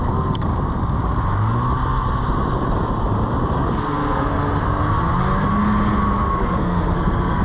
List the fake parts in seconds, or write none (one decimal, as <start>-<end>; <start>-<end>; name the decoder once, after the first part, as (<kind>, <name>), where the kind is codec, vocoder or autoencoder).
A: 0.0-0.5 (codec, SNAC); 3.7-4.8; 6.3-7.4